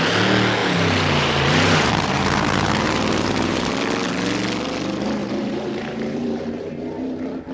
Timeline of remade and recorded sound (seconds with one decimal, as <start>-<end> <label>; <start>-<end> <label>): 0.0-0.6 recorded; 0.6-3.7 remade; 3.7-5.2 recorded; 5.2-6.7 remade; 6.7-7.5 recorded